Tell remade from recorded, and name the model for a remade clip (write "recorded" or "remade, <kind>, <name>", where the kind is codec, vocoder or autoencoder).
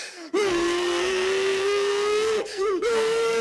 remade, codec, SNAC